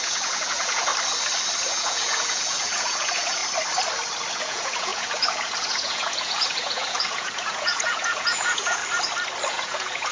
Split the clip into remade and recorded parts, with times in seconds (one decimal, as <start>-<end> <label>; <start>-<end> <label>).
0.0-0.9 remade; 0.9-1.7 recorded; 1.7-3.4 remade; 3.4-4.3 recorded; 4.3-8.8 remade; 8.8-9.5 recorded; 9.5-10.1 remade